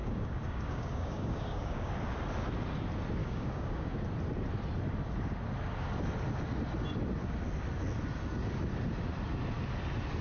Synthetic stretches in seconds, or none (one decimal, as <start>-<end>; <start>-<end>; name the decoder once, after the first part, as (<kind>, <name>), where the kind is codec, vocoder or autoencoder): 0.0-1.9 (codec, DAC); 3.2-4.0